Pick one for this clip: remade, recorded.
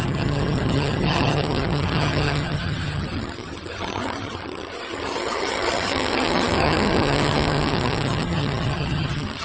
remade